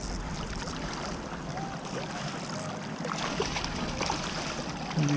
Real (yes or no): yes